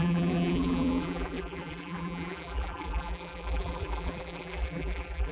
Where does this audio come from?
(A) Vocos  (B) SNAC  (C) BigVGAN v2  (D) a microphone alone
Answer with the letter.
C